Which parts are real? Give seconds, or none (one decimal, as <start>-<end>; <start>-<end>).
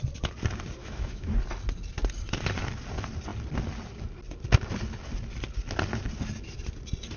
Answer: 0.0-0.8; 1.3-7.2